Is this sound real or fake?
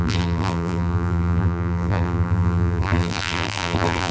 fake